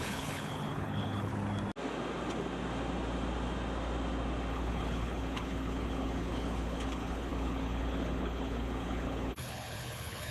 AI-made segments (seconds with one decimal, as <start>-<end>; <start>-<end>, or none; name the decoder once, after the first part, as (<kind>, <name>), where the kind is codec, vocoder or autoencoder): 0.0-1.3 (codec, HILCodec); 4.5-10.3

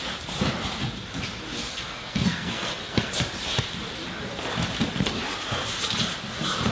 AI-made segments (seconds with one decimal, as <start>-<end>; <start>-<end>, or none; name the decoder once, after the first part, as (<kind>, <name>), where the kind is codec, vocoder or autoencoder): 1.6-3.1 (codec, SNAC)